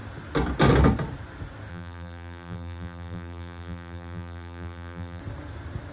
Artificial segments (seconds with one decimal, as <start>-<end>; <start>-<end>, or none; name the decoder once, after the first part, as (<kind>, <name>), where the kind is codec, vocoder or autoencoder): 1.7-5.2 (vocoder, BigVGAN v2)